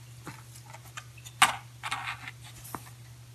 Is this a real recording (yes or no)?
yes